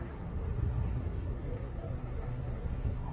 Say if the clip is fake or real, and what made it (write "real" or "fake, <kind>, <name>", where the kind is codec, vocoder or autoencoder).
fake, codec, SNAC